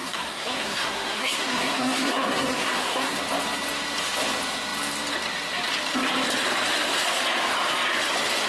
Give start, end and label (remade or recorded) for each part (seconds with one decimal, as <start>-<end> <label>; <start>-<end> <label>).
0.0-3.2 remade; 3.2-8.5 recorded